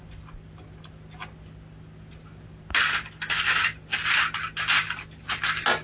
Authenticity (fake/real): real